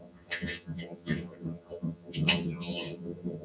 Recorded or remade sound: remade